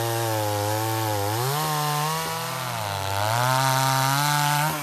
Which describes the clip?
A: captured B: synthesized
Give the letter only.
A